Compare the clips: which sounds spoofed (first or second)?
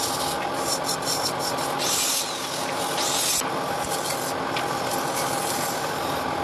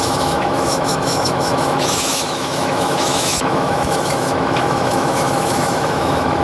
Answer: second